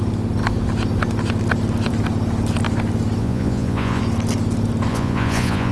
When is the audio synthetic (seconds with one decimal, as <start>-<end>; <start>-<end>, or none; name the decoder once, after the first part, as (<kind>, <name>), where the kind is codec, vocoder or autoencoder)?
3.2-4.0 (vocoder, Vocos); 4.9-5.7